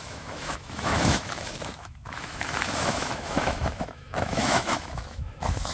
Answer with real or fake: fake